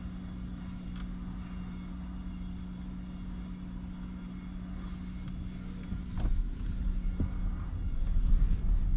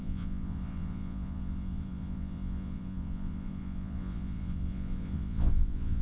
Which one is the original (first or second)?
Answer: first